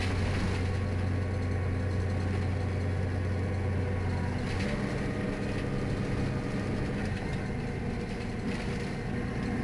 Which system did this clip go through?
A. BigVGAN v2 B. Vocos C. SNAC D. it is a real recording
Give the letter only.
D